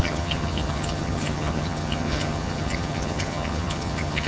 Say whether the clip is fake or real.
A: fake